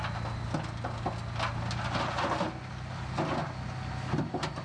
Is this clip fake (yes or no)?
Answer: no